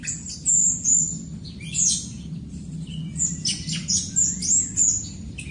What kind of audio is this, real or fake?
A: real